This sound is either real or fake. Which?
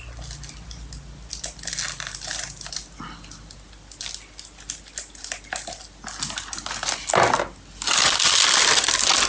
real